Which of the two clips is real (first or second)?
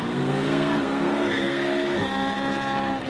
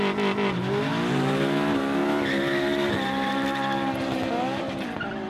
second